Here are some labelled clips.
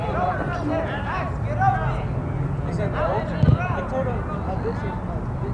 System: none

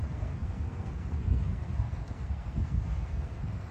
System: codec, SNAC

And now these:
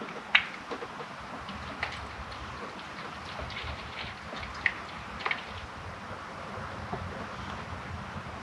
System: none